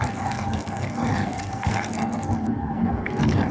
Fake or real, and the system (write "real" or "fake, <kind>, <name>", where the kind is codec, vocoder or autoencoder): fake, codec, SNAC